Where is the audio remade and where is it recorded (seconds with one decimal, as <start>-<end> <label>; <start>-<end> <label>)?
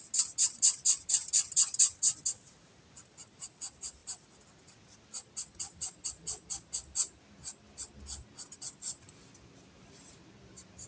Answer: 0.0-10.9 recorded